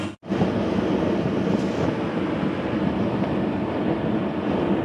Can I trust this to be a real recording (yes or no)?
yes